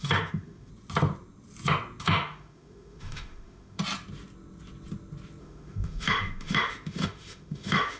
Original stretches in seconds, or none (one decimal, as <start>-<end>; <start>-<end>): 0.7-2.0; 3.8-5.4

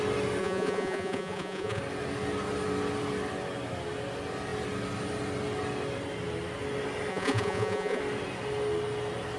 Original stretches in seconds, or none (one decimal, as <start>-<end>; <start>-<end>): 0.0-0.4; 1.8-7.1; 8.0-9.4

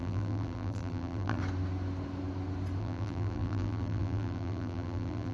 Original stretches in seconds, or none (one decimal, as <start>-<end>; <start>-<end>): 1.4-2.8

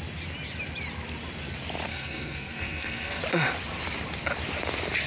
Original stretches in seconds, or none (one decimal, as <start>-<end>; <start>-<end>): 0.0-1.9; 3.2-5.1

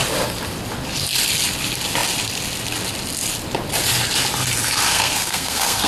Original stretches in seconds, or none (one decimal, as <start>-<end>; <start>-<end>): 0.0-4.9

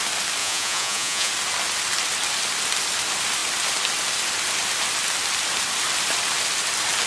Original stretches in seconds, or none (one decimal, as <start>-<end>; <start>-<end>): 0.0-0.4; 1.3-7.1

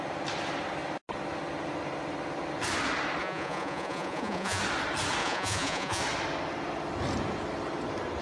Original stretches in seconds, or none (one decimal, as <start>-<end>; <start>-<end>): 0.0-3.2; 4.6-5.2; 6.0-8.2

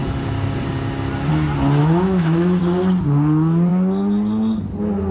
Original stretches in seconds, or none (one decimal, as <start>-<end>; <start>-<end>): 0.0-1.8; 2.6-5.1